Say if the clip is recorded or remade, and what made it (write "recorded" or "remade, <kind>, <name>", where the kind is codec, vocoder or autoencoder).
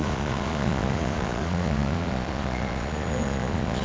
remade, vocoder, Vocos